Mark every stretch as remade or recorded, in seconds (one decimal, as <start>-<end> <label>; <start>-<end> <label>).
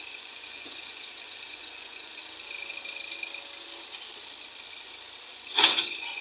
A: 0.0-2.2 remade; 2.2-5.3 recorded; 5.3-6.2 remade